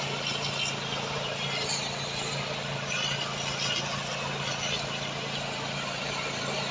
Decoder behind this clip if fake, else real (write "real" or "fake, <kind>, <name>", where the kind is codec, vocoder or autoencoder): real